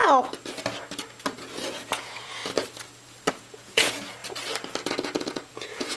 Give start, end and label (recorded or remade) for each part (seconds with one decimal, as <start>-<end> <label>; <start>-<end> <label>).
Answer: 0.0-1.7 recorded; 1.7-2.4 remade; 2.4-3.3 recorded; 3.3-4.2 remade; 4.2-4.9 recorded; 4.9-6.0 remade